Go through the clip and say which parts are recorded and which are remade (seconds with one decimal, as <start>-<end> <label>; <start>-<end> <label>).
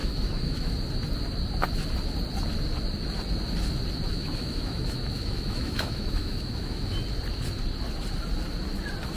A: 0.0-0.7 remade; 0.7-4.1 recorded; 4.1-6.9 remade; 6.9-9.2 recorded